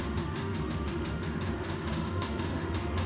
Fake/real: fake